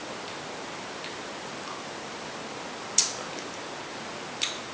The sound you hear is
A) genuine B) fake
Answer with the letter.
A